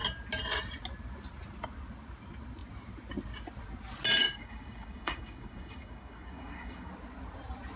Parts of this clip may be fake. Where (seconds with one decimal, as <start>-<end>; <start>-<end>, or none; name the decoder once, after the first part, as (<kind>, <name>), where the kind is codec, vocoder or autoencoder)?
4.2-6.9 (codec, DAC)